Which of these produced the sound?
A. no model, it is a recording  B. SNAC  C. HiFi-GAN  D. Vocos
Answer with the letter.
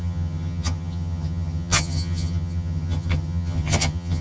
C